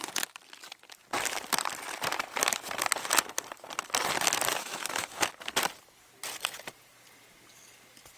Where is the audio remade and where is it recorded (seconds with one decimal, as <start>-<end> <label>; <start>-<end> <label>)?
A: 0.0-4.6 recorded; 4.6-5.3 remade; 5.3-8.2 recorded